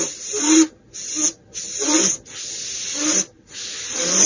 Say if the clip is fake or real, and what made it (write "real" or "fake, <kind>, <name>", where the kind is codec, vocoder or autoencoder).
fake, vocoder, BigVGAN v2